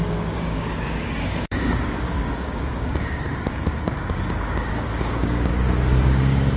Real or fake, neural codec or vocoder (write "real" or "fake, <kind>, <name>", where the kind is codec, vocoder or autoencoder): fake, codec, DAC